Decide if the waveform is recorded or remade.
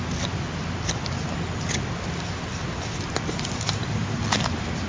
recorded